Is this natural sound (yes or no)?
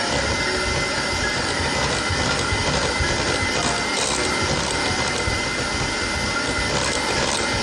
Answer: yes